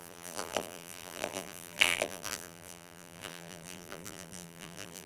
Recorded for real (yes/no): no